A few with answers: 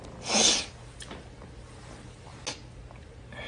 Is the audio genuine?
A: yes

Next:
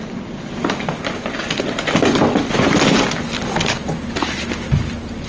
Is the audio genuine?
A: yes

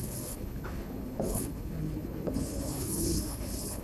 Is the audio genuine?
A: no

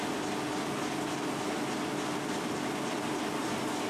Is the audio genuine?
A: yes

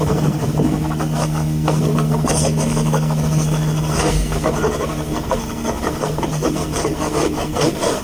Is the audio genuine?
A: no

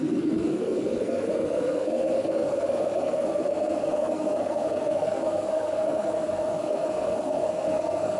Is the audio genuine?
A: no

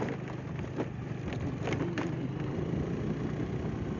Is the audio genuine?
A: yes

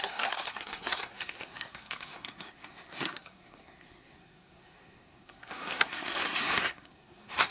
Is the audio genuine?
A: no